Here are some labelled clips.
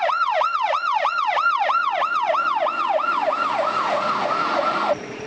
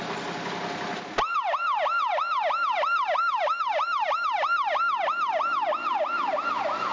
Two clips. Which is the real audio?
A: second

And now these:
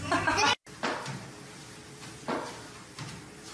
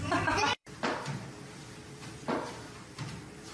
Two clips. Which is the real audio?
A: first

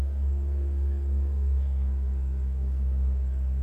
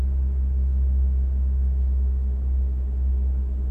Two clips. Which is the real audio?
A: second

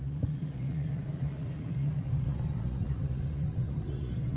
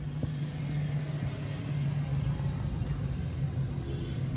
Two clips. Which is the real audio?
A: second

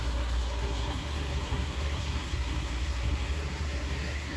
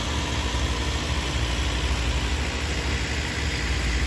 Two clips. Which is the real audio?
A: second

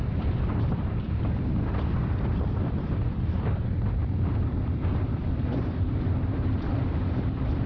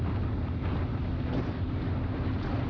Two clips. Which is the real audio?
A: second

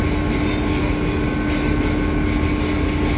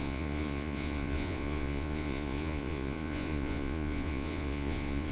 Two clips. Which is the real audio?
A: first